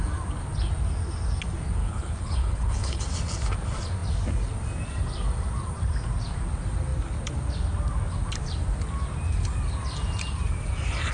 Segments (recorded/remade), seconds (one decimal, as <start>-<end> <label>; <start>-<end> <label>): 0.0-1.8 recorded; 1.8-3.0 remade; 3.0-11.1 recorded